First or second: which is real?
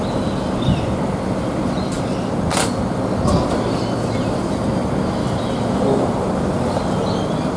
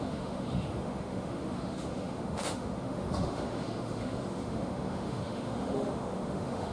first